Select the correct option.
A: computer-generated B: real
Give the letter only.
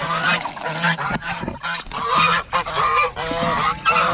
B